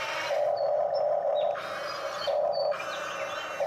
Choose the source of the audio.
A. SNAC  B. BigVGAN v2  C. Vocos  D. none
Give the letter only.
D